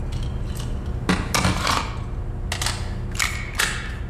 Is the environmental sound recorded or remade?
recorded